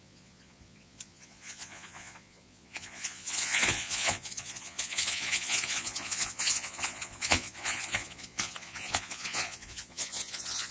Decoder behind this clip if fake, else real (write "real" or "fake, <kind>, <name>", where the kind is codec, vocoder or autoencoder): fake, vocoder, Vocos